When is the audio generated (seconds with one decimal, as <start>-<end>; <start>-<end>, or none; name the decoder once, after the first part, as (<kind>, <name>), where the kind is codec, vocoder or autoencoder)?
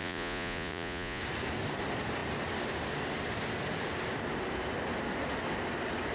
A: 0.0-1.2 (vocoder, Vocos)